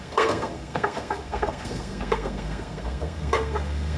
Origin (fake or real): fake